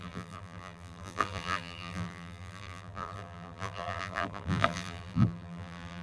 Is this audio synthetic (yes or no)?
yes